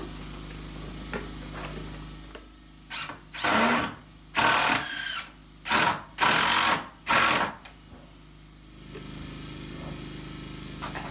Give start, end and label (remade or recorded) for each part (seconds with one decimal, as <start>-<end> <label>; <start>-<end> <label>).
0.0-11.1 recorded